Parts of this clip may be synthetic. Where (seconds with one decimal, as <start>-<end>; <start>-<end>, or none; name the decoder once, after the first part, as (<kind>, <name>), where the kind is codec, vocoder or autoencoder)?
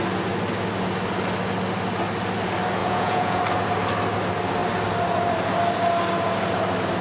2.8-3.4 (vocoder, Vocos)